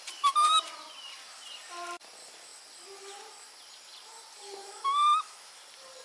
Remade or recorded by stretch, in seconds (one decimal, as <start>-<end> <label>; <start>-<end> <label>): 0.0-4.6 recorded; 4.6-5.6 remade; 5.6-6.0 recorded